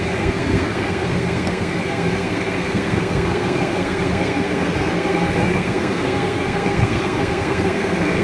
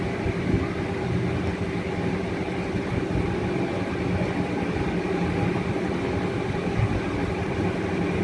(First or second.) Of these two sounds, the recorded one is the second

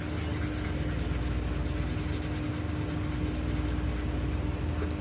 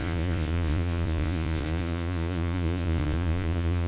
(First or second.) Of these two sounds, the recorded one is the first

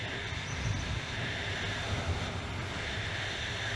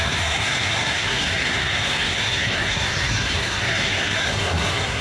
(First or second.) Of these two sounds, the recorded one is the first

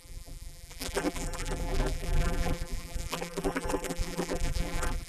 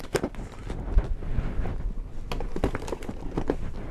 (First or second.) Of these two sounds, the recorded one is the second